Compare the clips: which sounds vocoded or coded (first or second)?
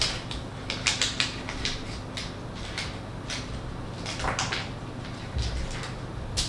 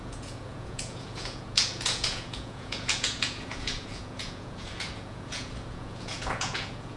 second